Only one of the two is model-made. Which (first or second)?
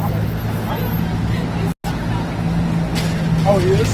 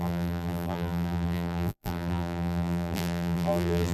second